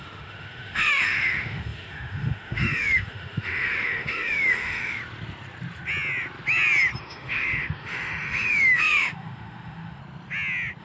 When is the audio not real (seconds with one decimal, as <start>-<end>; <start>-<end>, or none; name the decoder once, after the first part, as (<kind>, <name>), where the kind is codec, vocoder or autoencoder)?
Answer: 0.0-5.0 (autoencoder, DAC-VAE); 7.0-10.0